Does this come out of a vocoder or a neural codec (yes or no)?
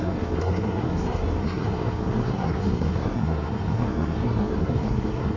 yes